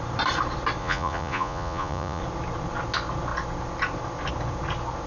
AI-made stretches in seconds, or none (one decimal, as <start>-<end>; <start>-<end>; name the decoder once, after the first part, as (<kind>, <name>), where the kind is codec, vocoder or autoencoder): 0.8-2.2 (vocoder, Vocos)

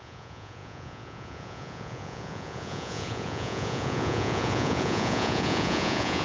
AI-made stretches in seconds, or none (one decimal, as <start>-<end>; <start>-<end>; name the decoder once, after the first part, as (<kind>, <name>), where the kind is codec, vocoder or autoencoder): 0.0-6.2 (vocoder, Vocos)

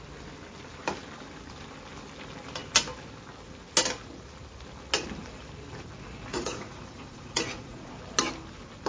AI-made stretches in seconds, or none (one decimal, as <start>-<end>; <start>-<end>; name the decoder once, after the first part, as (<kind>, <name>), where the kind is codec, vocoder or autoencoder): 6.3-7.9 (vocoder, Vocos)

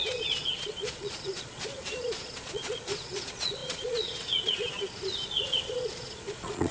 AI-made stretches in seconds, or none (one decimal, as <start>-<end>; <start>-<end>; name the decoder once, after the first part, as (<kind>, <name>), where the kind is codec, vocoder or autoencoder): 0.0-6.7 (vocoder, Vocos)

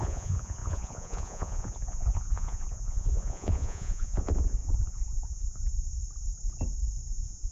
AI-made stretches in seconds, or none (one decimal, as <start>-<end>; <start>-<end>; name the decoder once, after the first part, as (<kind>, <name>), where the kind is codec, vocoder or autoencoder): 0.0-5.6 (vocoder, Vocos); 7.1-7.5

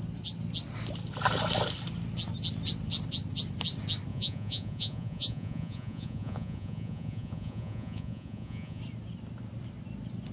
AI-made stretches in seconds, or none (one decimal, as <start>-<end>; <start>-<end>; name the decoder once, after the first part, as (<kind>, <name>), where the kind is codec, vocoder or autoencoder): 4.1-8.8 (vocoder, Vocos)

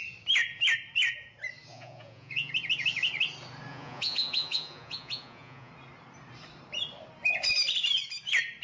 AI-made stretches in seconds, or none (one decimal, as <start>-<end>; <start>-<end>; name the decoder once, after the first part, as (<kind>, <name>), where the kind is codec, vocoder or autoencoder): 1.7-2.5 (vocoder, Vocos); 3.7-5.7